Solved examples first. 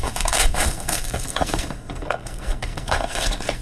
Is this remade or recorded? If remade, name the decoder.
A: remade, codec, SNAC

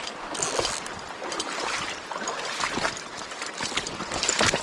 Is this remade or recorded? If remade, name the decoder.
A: recorded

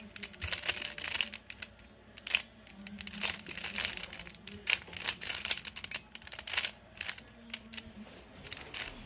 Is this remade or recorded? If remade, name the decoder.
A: recorded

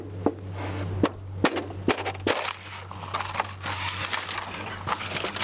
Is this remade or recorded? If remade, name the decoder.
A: recorded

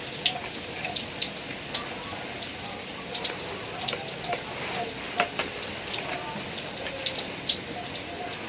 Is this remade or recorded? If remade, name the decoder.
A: recorded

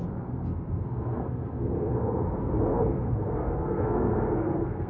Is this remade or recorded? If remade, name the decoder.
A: remade, codec, SNAC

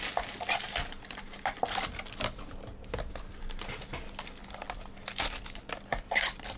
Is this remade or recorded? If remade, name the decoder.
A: recorded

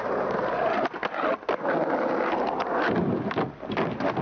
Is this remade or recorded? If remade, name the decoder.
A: recorded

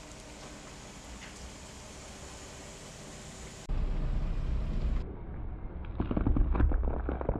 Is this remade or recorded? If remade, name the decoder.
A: recorded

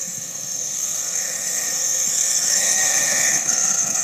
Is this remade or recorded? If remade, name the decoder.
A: remade, codec, SNAC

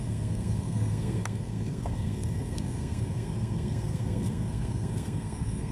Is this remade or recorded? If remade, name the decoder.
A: remade, codec, SNAC